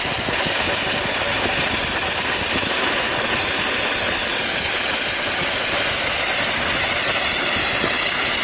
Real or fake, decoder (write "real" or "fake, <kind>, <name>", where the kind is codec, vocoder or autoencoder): real